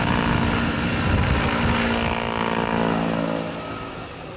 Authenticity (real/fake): real